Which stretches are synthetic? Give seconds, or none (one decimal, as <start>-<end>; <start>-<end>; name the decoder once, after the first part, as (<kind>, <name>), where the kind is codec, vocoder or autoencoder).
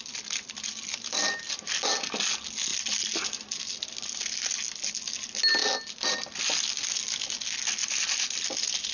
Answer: 7.8-8.4 (vocoder, BigVGAN v2)